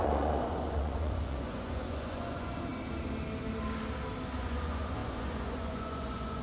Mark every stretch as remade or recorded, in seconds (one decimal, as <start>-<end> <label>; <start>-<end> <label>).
0.0-2.7 remade; 2.7-4.4 recorded; 4.4-6.4 remade